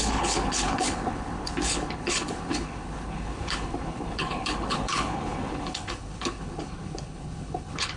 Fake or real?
fake